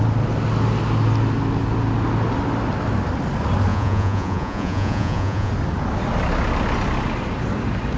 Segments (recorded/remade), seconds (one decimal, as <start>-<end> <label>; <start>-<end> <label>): 0.0-3.7 recorded; 3.7-5.5 remade; 5.5-8.0 recorded